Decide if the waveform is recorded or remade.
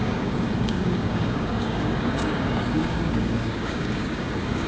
remade